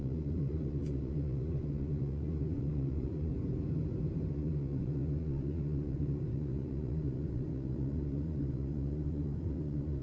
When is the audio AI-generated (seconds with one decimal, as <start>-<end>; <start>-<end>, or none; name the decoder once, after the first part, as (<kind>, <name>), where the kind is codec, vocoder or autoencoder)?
0.0-3.3 (vocoder, Vocos); 4.3-10.0